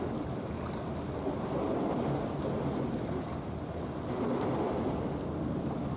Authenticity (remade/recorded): recorded